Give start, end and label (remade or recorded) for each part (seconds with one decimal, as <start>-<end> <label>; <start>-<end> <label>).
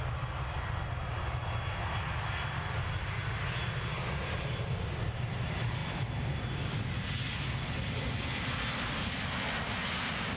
0.0-10.4 recorded